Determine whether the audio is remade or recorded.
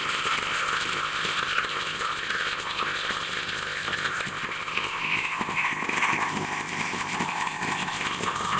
remade